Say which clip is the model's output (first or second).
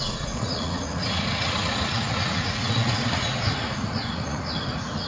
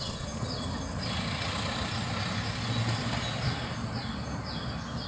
first